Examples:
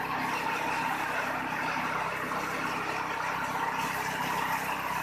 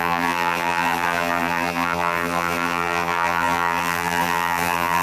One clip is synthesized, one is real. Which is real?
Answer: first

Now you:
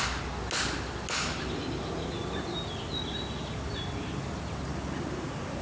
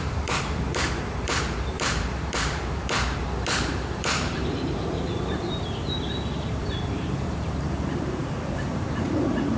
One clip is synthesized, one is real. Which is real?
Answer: first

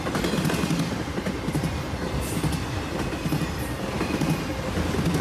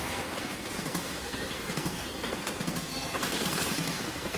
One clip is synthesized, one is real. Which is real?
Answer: first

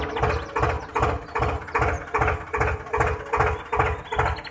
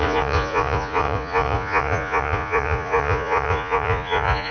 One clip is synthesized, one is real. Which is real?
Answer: first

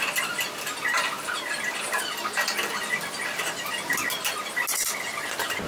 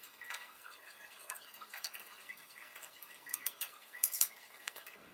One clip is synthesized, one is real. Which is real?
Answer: first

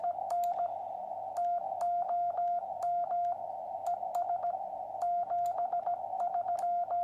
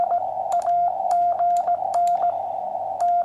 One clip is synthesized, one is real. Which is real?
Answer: first